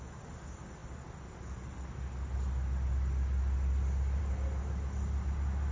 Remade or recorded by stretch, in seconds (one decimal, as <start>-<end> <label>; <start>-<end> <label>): 0.0-5.7 recorded

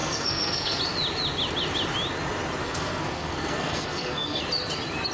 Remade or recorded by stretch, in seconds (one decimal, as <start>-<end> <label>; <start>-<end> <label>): 0.0-0.8 remade; 0.8-2.6 recorded; 2.6-4.4 remade; 4.4-5.1 recorded

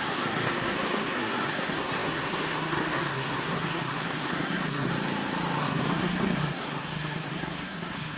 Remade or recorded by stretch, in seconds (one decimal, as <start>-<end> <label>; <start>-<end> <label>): 0.0-4.9 remade; 4.9-5.6 recorded; 5.6-8.2 remade